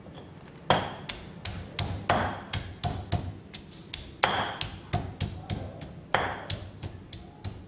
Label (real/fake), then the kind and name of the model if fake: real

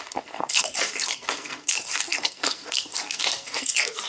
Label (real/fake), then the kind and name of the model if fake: fake, codec, SNAC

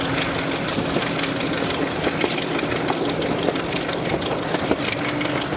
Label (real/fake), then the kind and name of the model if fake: real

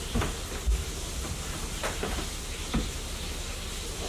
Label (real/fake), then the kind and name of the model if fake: fake, vocoder, BigVGAN v2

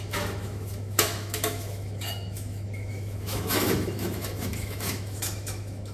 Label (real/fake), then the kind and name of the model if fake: fake, autoencoder, DAC-VAE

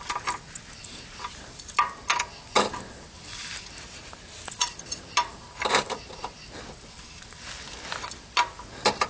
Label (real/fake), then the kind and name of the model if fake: real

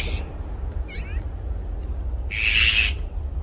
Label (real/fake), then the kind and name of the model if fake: real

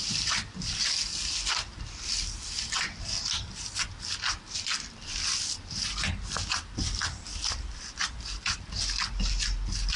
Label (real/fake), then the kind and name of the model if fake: fake, vocoder, BigVGAN v2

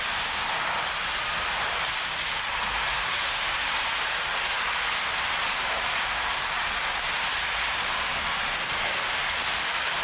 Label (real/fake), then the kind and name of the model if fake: real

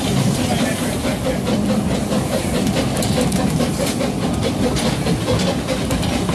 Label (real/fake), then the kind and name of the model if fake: real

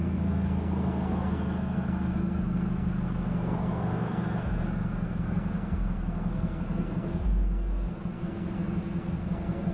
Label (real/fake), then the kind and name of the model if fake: fake, codec, SNAC